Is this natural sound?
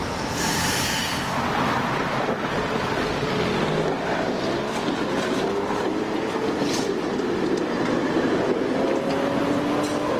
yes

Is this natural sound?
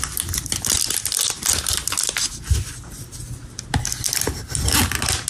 yes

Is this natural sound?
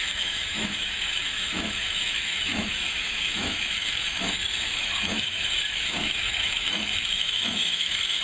no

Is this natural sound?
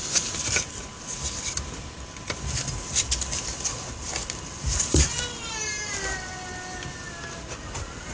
yes